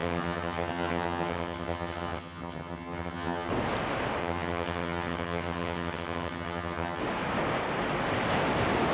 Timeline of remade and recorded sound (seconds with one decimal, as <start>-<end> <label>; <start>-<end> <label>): 0.0-3.5 remade; 3.5-4.2 recorded; 4.2-7.0 remade; 7.0-8.9 recorded